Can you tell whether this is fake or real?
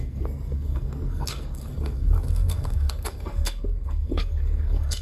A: fake